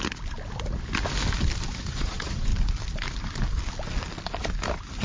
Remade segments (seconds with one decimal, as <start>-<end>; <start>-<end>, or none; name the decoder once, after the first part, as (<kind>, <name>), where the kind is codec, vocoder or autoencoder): 1.8-2.5 (vocoder, Vocos)